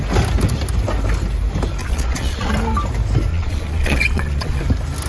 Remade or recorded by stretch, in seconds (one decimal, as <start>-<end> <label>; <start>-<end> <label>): 0.0-1.8 recorded; 1.8-2.5 remade; 2.5-3.3 recorded; 3.3-4.6 remade; 4.6-5.1 recorded